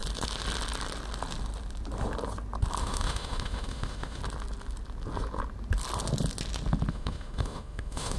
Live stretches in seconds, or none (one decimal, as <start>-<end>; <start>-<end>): 0.0-2.8; 4.2-6.9